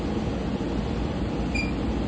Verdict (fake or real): real